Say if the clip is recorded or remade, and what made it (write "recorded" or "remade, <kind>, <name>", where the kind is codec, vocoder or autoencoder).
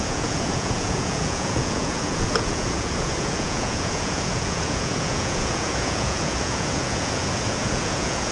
remade, vocoder, Vocos